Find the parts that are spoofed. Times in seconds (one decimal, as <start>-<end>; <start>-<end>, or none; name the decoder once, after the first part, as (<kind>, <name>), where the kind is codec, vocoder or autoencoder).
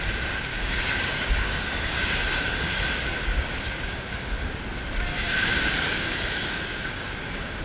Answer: 0.5-4.6 (codec, DAC); 5.1-7.6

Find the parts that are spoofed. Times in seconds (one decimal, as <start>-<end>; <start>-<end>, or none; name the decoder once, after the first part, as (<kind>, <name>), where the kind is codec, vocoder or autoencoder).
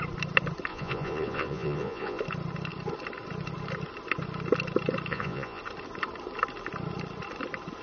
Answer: 0.7-2.2 (vocoder, Vocos); 5.1-5.6